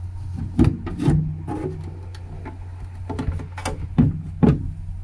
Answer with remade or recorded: recorded